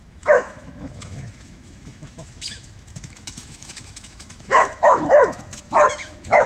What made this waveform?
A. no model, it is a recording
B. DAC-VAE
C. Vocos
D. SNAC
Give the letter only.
B